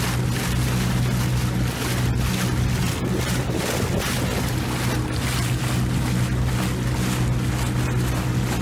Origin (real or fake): real